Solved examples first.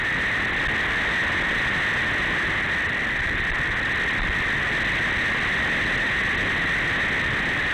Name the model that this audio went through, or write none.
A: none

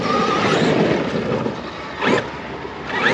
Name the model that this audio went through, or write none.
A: none